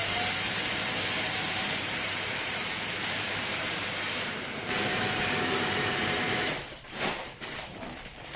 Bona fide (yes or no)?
no